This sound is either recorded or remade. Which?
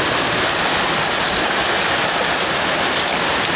recorded